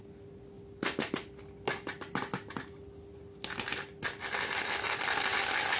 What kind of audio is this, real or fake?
real